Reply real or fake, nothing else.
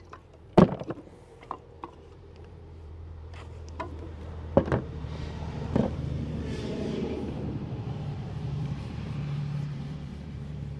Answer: fake